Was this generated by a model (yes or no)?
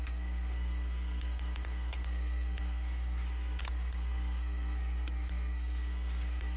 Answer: yes